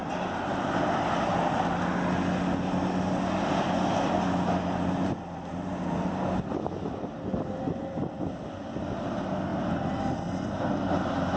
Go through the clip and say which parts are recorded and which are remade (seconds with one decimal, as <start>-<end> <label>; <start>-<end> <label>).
0.0-11.4 recorded